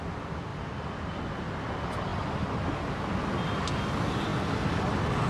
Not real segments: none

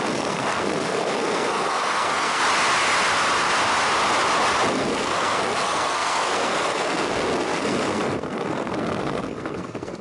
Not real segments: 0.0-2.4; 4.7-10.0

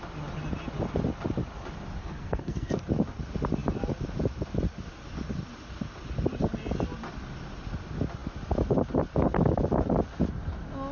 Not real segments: 2.0-2.7